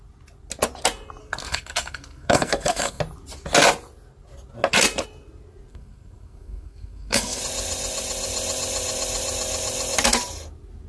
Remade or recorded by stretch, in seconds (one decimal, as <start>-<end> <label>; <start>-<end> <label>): 0.0-1.2 recorded; 1.2-3.0 remade; 3.0-5.7 recorded; 5.7-7.4 remade; 7.4-10.9 recorded